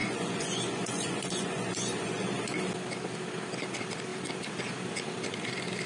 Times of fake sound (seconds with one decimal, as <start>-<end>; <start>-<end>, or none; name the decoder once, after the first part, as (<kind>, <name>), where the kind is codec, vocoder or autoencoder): 0.0-2.5 (vocoder, Vocos)